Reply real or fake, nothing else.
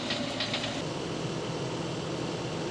real